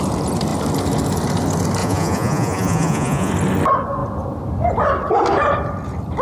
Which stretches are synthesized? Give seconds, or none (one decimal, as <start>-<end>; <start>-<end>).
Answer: 1.8-3.3